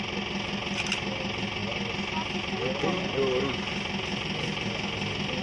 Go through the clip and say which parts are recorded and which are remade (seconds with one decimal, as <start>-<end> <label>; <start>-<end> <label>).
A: 0.0-5.4 recorded